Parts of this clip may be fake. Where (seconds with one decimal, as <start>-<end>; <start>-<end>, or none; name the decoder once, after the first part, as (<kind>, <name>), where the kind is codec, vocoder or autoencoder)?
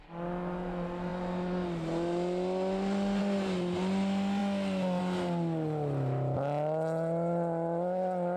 none